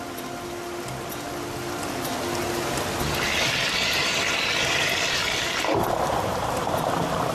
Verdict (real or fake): real